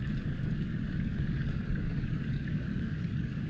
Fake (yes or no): yes